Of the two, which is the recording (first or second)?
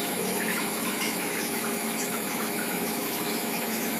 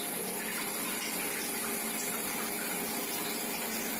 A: second